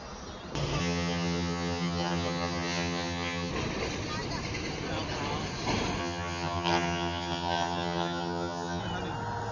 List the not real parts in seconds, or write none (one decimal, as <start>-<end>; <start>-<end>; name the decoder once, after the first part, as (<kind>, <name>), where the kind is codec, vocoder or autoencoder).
0.8-3.5 (vocoder, HiFi-GAN); 6.0-8.8